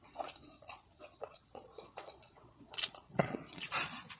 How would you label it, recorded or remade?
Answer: remade